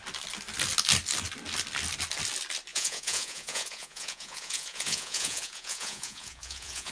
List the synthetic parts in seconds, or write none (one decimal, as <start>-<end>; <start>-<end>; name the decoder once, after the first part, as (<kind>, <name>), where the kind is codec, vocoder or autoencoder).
2.7-6.9 (vocoder, Vocos)